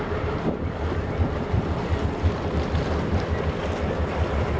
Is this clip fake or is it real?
real